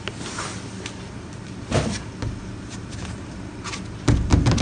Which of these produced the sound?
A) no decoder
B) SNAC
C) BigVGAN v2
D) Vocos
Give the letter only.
A